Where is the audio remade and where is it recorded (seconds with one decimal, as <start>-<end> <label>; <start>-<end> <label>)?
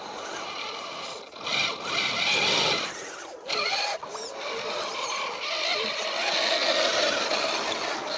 0.0-8.2 recorded